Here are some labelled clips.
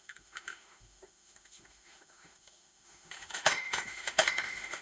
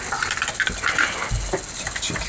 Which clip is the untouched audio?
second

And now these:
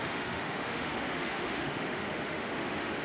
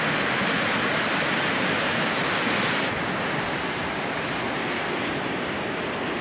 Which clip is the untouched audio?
second